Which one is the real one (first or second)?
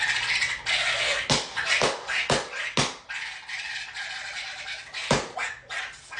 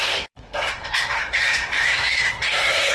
first